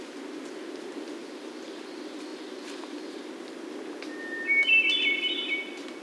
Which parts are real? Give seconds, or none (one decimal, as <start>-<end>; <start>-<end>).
0.0-6.0